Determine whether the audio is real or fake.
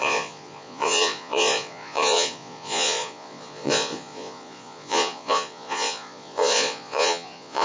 fake